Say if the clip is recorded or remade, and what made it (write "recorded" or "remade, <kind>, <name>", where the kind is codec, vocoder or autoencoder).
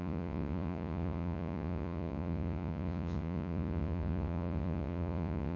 remade, vocoder, Vocos